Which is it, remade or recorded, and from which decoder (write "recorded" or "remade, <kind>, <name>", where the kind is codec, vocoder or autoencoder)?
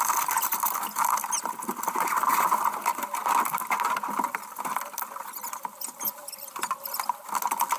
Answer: recorded